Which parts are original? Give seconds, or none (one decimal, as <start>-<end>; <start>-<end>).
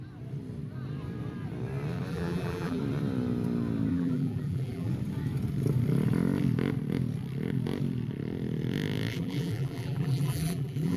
0.0-2.1; 2.8-3.9; 4.9-9.1